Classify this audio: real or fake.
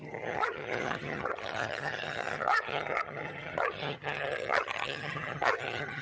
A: fake